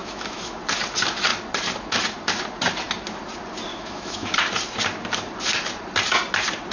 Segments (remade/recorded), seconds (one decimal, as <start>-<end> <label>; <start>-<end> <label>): 0.0-0.6 remade; 0.6-3.7 recorded; 3.7-4.3 remade; 4.3-6.7 recorded